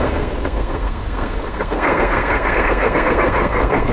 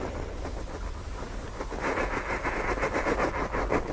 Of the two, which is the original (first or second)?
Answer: second